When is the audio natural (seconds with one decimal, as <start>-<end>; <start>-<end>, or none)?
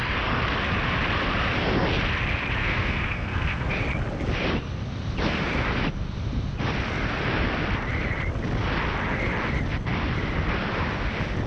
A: 0.0-2.6; 3.7-11.5